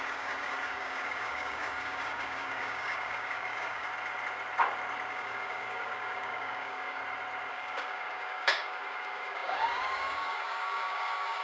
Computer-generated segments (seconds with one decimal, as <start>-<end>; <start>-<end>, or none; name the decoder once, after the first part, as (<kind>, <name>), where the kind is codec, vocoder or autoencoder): 0.0-3.9 (codec, DAC); 5.1-7.0; 7.5-11.4